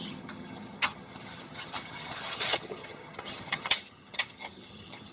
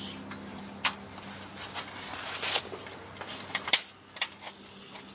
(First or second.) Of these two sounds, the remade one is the first